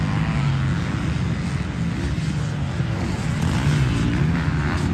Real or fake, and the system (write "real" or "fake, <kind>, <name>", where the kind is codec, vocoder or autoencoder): real